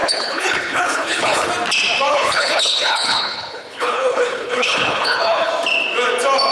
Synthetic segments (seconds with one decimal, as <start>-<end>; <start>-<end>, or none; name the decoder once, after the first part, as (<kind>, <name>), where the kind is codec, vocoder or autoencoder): 0.0-1.5 (codec, HILCodec); 2.1-5.5